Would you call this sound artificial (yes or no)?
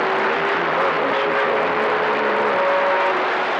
no